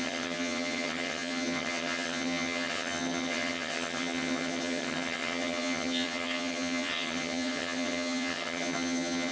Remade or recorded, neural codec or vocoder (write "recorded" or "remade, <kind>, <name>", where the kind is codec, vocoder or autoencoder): remade, vocoder, HiFi-GAN